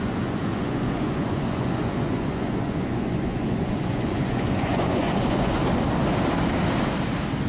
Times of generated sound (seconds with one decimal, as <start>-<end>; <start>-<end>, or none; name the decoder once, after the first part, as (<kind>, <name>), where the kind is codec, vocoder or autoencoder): 0.0-5.6 (vocoder, Vocos)